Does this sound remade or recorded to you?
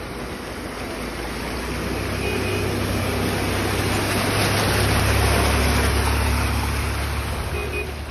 recorded